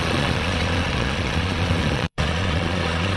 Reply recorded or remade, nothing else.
remade